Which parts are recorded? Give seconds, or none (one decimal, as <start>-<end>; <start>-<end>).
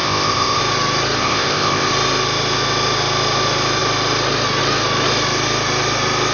0.6-1.2; 1.9-6.3